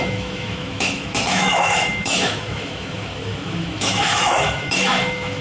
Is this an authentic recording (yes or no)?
no